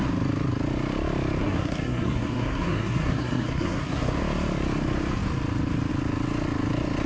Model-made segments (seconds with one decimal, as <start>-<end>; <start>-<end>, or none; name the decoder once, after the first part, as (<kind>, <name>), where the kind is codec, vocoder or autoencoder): 1.4-4.2 (codec, SNAC)